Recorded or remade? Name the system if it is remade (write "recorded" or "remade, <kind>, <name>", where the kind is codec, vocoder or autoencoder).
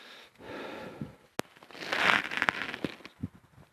recorded